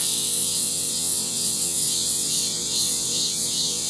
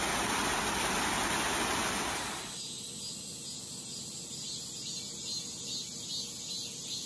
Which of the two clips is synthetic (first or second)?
first